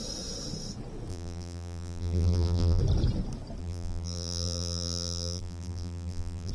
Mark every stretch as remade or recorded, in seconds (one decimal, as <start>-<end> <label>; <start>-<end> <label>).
0.0-1.1 recorded; 1.1-2.8 remade; 2.8-3.6 recorded; 3.6-6.5 remade